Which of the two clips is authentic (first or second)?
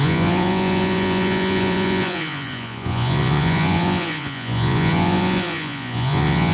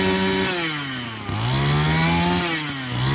second